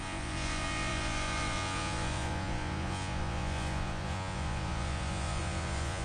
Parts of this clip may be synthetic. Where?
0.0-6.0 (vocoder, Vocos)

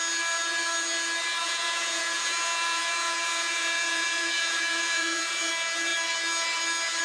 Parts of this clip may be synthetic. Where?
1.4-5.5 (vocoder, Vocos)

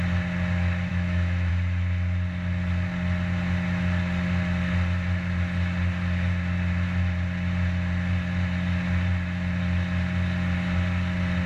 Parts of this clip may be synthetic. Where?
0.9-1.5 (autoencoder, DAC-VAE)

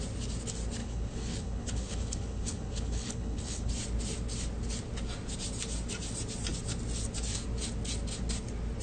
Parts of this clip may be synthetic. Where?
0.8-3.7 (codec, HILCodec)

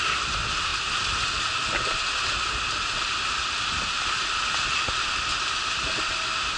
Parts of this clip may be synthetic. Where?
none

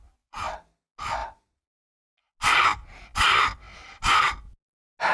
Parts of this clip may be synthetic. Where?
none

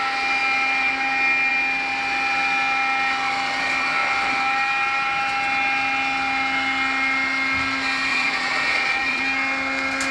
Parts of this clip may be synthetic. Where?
8.1-9.2 (vocoder, Vocos)

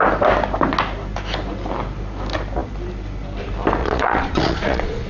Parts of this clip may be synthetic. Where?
3.8-5.1 (vocoder, Vocos)